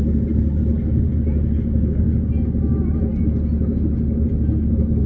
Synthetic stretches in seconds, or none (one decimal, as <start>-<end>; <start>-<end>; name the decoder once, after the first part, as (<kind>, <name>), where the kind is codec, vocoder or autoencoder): none